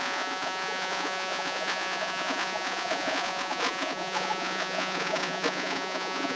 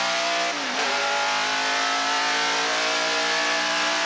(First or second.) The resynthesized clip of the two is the first